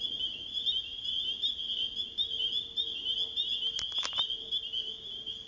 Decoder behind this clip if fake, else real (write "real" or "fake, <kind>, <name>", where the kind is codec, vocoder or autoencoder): real